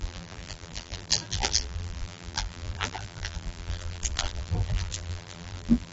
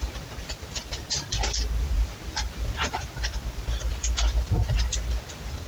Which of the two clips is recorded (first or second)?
second